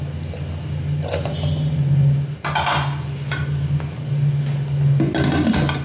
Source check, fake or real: real